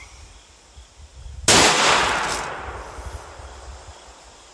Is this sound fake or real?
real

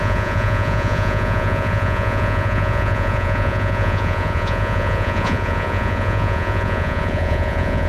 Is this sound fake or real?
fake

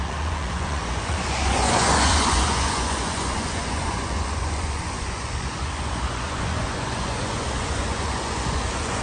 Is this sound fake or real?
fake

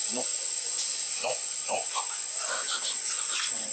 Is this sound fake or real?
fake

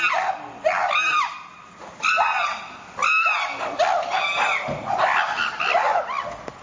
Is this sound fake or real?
real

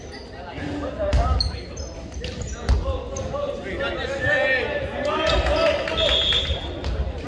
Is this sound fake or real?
real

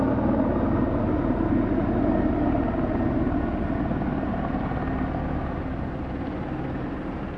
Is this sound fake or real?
real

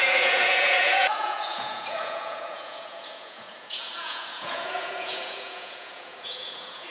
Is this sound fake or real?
fake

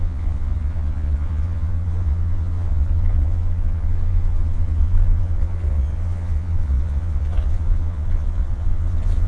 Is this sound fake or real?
fake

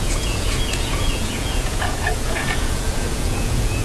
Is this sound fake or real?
fake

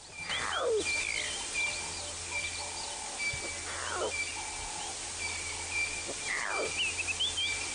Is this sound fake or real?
real